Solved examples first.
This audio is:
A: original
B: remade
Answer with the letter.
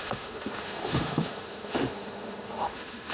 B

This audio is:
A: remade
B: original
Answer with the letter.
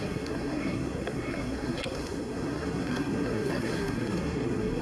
A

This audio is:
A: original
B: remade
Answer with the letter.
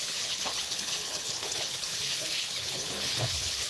B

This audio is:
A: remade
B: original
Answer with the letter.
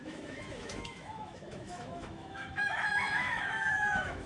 A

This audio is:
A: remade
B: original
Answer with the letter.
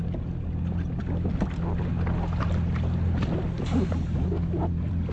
B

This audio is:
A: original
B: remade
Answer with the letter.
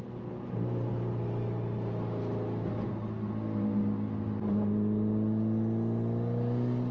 A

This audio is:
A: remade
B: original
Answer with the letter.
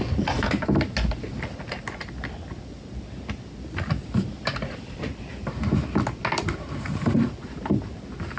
B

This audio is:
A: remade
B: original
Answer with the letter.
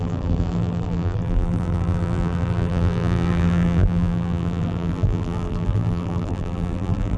A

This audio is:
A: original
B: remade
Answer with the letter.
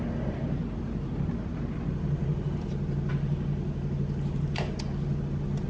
A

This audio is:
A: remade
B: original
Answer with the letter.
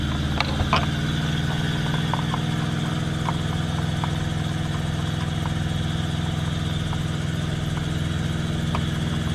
B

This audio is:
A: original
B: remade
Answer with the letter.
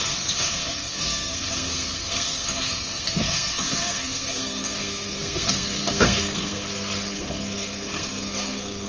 B